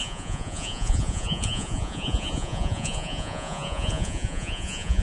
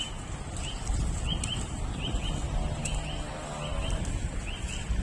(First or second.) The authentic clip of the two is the second